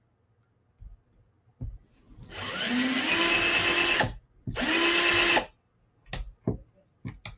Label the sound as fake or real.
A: real